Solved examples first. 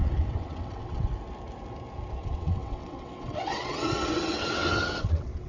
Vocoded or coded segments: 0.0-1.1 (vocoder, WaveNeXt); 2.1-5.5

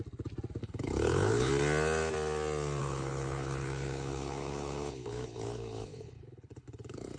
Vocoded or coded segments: 0.6-1.5 (codec, HILCodec); 2.8-7.2

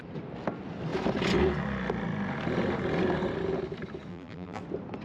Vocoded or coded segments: 4.1-4.6 (vocoder, BigVGAN v2)